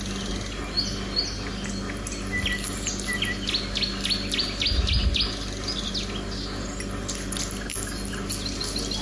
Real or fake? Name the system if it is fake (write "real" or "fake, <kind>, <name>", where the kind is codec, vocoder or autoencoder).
real